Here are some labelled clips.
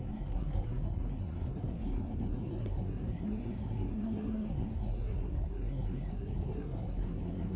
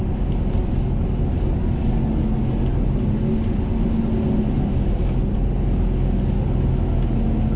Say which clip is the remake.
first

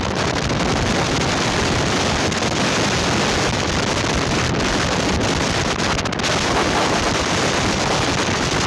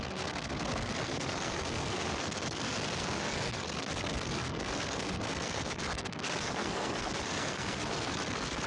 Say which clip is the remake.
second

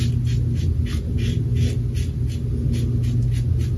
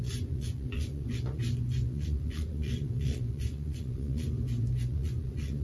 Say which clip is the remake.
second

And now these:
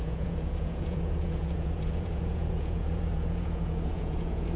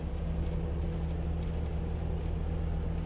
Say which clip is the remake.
first